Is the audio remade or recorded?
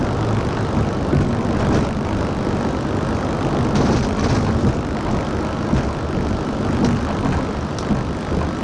recorded